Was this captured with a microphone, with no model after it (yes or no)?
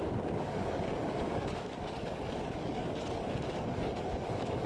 no